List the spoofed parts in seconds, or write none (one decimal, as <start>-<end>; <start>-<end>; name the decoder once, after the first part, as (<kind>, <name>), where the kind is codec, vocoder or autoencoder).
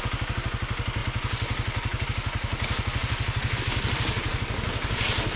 none